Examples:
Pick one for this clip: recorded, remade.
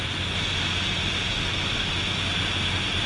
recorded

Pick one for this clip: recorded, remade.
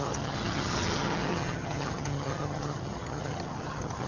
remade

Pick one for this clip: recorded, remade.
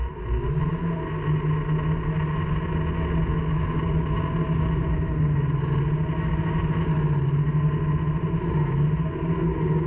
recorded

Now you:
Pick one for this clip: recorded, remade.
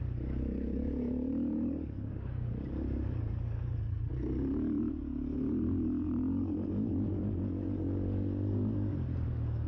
remade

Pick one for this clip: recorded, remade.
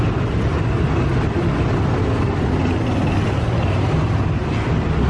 recorded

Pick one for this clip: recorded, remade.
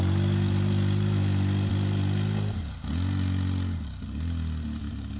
recorded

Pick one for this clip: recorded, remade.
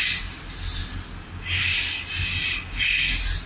recorded